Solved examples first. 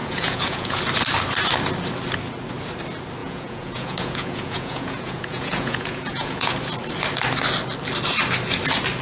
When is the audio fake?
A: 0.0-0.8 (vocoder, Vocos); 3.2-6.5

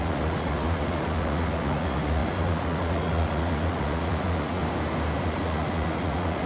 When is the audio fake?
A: 0.0-4.6 (vocoder, Vocos); 5.2-6.5

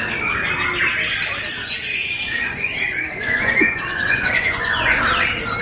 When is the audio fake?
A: 1.6-5.0 (vocoder, Vocos)

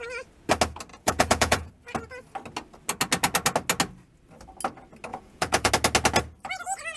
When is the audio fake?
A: 0.9-1.7 (vocoder, Vocos); 5.1-5.7

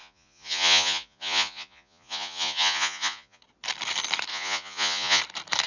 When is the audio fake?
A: 0.0-3.4 (vocoder, Vocos); 4.3-5.2